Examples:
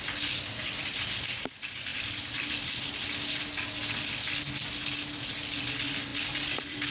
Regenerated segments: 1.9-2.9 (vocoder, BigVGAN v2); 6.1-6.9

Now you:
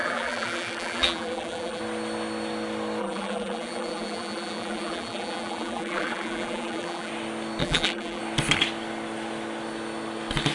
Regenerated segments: 0.0-1.8 (vocoder, BigVGAN v2); 3.0-7.1; 7.6-8.2

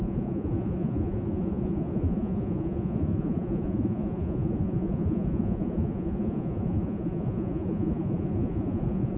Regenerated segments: 0.0-9.2 (vocoder, Vocos)

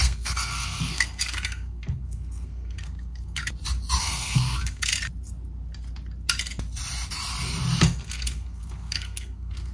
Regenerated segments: 0.0-3.4 (codec, SNAC); 4.0-4.9; 7.8-9.7

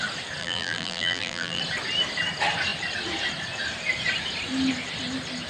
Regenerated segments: 0.4-1.6 (vocoder, BigVGAN v2)

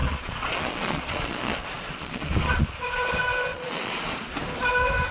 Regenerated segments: 0.0-3.1 (vocoder, Vocos); 3.5-4.1

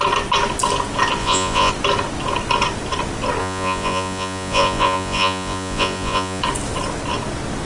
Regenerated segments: 1.2-1.7 (vocoder, Vocos); 3.4-6.4